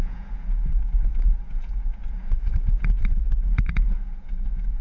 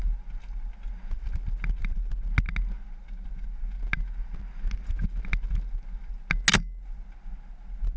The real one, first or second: second